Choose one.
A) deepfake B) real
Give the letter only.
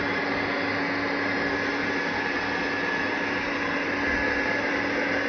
B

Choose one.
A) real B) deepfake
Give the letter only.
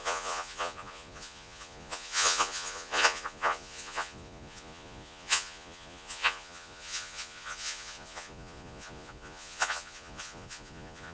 B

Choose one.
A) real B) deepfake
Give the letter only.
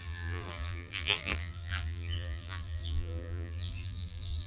B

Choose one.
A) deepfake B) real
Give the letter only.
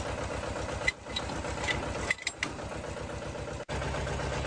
B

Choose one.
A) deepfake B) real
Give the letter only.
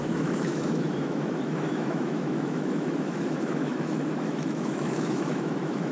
A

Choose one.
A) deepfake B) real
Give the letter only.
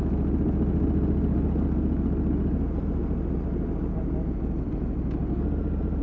B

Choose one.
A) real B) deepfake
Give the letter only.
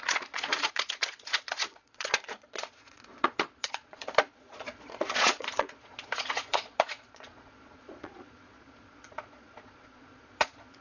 B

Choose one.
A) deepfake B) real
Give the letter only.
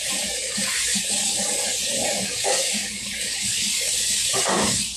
A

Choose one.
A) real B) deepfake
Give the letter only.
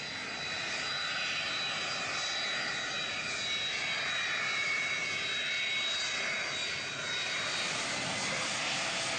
A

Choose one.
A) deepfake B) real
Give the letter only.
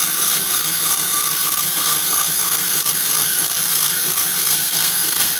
A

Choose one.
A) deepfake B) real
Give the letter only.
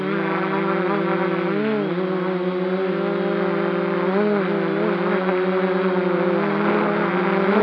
B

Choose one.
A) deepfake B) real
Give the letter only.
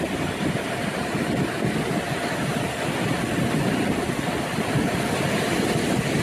B